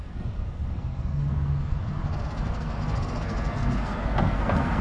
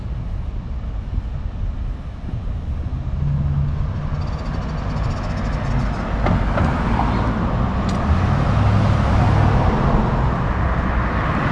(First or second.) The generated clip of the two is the first